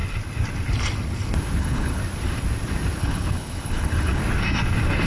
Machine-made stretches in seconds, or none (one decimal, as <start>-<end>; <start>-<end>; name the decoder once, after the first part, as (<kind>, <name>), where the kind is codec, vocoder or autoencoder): 1.6-2.0 (codec, HILCodec); 3.0-4.2